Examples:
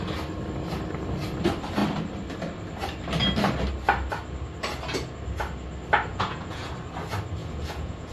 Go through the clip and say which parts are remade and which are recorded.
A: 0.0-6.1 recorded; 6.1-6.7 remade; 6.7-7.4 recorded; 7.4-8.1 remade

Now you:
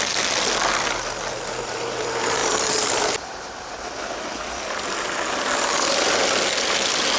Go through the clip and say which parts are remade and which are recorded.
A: 0.0-7.2 recorded

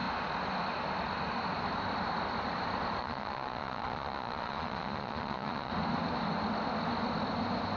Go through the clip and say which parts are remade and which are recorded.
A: 0.0-3.0 recorded; 3.0-5.7 remade; 5.7-7.8 recorded